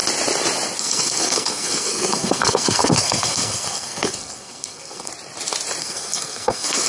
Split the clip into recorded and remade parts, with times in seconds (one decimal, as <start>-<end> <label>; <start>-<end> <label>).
0.0-0.8 recorded; 0.8-5.1 remade; 5.1-5.8 recorded; 5.8-6.9 remade